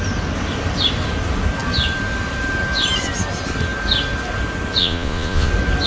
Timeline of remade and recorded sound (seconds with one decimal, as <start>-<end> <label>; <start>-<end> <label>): 0.0-4.8 recorded; 4.8-5.5 remade; 5.5-5.9 recorded